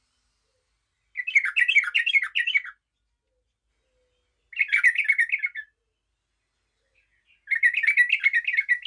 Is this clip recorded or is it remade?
recorded